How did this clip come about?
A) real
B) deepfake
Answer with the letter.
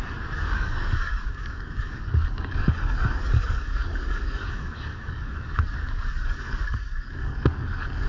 B